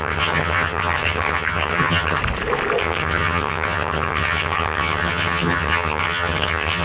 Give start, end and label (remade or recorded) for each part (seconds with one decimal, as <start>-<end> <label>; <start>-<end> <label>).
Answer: 0.0-2.2 remade; 2.2-2.8 recorded; 2.8-6.8 remade